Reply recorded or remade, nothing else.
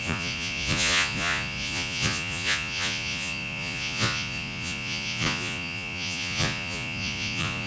remade